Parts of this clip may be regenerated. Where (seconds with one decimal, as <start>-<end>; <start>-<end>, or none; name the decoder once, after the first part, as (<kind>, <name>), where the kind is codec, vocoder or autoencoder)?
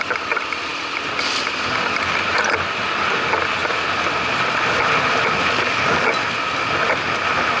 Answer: none